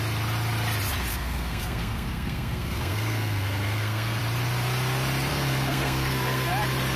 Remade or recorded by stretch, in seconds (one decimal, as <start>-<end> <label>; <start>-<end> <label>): 0.0-1.1 recorded; 1.1-4.2 remade; 4.2-5.3 recorded; 5.3-6.5 remade; 6.5-7.0 recorded